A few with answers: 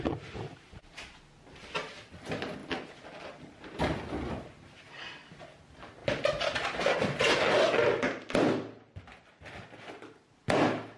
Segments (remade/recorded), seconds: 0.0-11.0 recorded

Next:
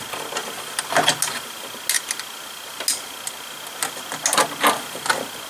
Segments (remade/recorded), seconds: 0.0-5.5 recorded